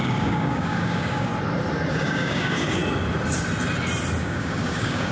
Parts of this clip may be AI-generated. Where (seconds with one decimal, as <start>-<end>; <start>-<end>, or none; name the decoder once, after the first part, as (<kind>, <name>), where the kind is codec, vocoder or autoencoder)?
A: 0.0-1.3 (codec, DAC); 1.9-2.8; 4.2-5.1